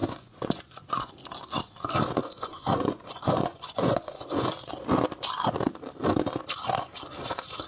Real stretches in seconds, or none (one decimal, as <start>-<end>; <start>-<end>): 1.1-2.2; 4.5-7.7